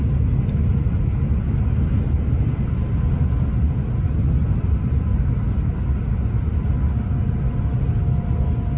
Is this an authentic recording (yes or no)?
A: yes